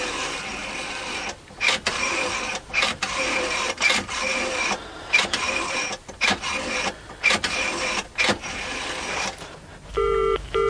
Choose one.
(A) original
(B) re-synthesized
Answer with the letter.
B